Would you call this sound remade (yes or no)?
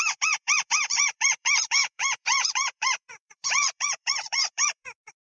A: yes